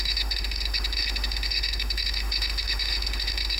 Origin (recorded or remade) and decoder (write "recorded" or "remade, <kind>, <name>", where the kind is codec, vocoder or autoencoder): remade, autoencoder, DAC-VAE